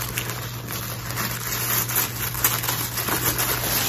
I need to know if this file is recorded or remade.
recorded